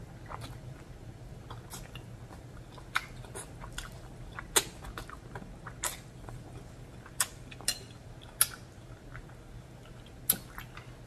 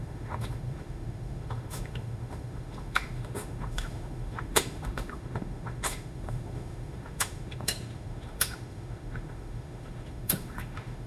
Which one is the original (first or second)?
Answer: first